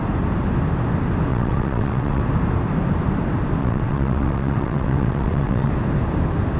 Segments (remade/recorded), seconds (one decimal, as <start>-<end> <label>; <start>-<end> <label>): 0.0-1.3 recorded; 1.3-2.2 remade; 2.2-3.6 recorded; 3.6-5.7 remade; 5.7-6.6 recorded